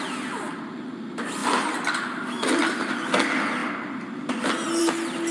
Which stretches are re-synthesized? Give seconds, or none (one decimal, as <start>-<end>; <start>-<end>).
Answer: 1.4-2.7; 3.6-4.8